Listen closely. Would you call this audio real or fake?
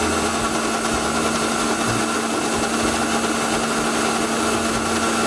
real